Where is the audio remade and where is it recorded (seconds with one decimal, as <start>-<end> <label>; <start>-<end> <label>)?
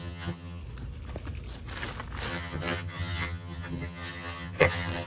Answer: 0.0-0.6 remade; 0.6-2.3 recorded; 2.3-5.1 remade